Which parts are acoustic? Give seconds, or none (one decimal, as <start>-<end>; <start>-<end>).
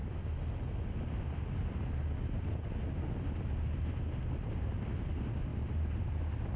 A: 0.0-6.6